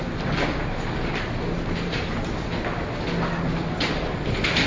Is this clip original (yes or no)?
yes